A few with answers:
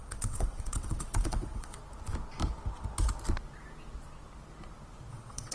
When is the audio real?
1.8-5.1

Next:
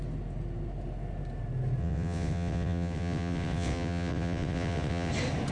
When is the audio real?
0.0-1.8; 5.1-5.5

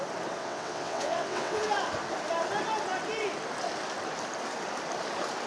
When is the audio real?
0.0-0.4; 1.6-5.5

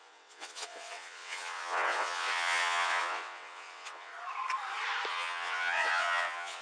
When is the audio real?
4.1-5.1

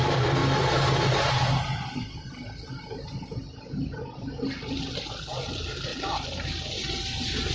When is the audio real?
0.0-7.5

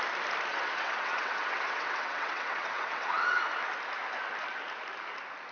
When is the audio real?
0.0-0.5; 3.4-5.5

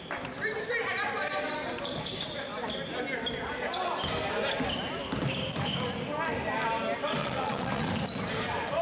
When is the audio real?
0.0-7.2; 7.9-8.8

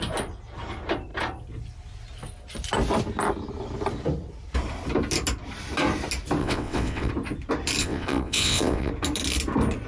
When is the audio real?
0.0-6.4; 7.1-7.8; 8.9-9.9